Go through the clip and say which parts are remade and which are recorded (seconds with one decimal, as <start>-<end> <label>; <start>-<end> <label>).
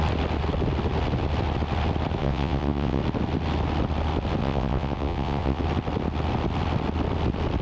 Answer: 0.0-2.2 recorded; 2.2-3.0 remade; 3.0-4.4 recorded; 4.4-5.6 remade; 5.6-7.6 recorded